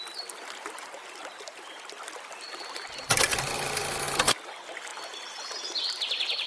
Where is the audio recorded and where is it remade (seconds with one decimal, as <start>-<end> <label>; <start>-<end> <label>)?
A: 0.0-6.5 recorded